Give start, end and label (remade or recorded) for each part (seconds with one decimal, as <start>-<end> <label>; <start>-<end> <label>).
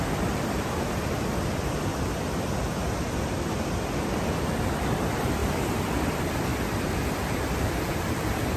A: 0.0-1.9 remade; 1.9-3.1 recorded; 3.1-5.4 remade; 5.4-6.0 recorded; 6.0-6.5 remade; 6.5-7.9 recorded; 7.9-8.6 remade